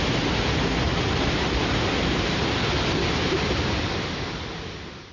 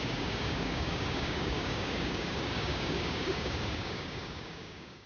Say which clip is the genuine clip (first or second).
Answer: first